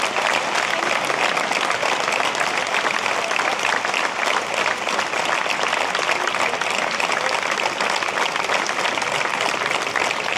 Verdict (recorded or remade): recorded